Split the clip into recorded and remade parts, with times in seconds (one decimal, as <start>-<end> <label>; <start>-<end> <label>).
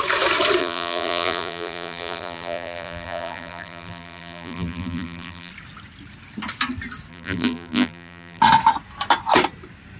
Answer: 0.0-0.6 recorded; 0.6-5.5 remade; 5.5-7.1 recorded; 7.1-8.4 remade; 8.4-10.0 recorded